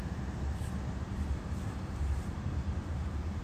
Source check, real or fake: fake